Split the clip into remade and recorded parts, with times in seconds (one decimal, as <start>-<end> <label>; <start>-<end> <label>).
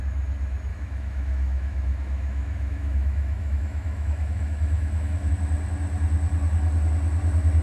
0.0-0.7 recorded; 0.7-5.3 remade; 5.3-7.6 recorded